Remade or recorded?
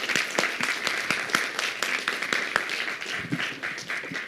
recorded